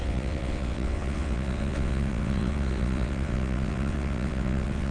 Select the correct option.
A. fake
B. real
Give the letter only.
A